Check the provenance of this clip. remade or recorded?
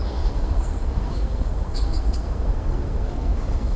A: remade